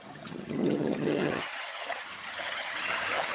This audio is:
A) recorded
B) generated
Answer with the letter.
B